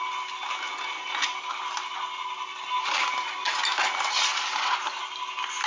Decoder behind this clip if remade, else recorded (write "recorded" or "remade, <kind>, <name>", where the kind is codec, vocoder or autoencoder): recorded